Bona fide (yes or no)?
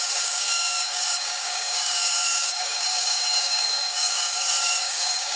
no